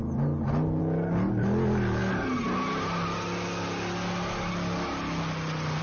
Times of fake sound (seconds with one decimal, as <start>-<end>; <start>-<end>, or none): none